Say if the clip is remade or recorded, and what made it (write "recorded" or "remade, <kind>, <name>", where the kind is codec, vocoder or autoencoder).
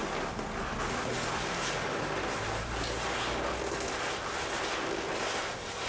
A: recorded